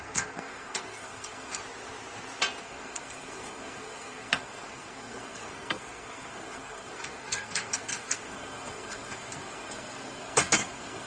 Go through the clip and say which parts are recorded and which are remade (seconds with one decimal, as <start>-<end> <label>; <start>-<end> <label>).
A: 0.0-1.6 remade; 1.6-2.6 recorded; 2.6-11.1 remade